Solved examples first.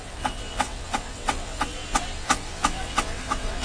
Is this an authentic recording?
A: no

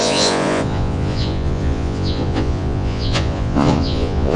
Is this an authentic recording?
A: no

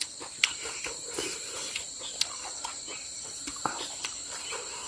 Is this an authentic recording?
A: yes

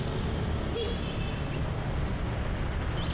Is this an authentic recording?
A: yes